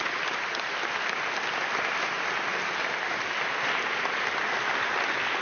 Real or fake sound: real